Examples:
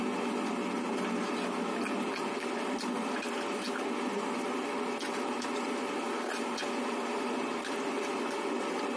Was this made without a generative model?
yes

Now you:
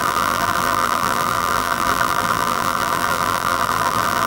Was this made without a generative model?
no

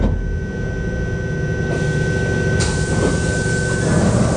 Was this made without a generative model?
yes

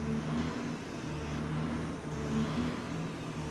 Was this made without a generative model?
yes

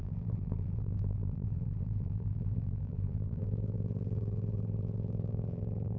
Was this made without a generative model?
no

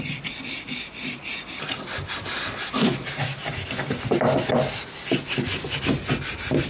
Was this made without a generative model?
yes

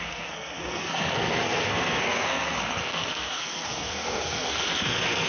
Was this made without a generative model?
no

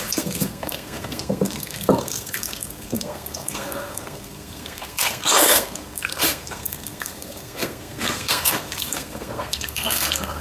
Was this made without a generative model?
no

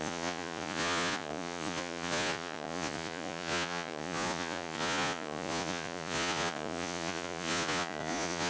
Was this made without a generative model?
no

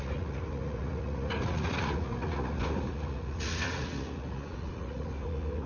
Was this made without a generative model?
no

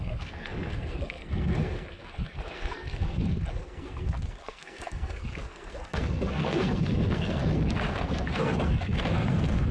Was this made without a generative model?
no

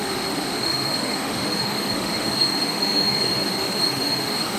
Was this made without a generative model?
no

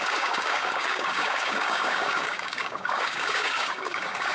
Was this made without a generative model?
no